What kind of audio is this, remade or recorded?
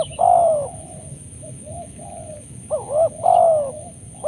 remade